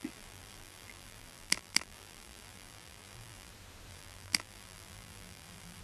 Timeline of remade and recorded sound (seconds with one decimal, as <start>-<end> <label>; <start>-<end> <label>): 0.0-3.5 remade; 3.5-3.9 recorded; 3.9-5.8 remade